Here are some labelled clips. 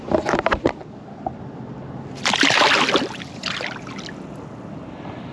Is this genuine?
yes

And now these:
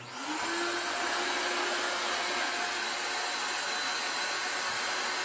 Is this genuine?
yes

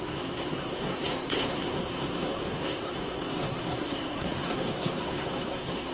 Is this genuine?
no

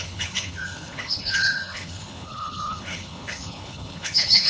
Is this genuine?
no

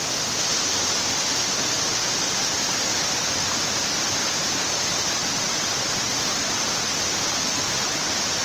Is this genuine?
yes